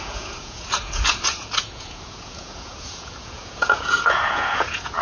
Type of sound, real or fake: fake